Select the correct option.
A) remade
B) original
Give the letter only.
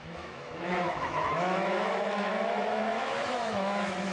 A